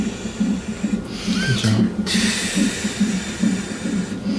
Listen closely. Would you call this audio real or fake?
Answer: real